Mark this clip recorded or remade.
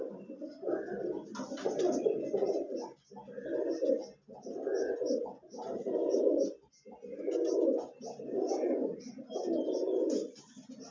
recorded